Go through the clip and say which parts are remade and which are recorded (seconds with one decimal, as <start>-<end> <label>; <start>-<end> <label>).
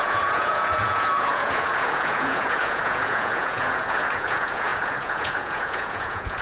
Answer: 0.0-6.4 remade